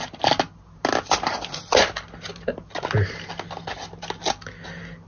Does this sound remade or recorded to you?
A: recorded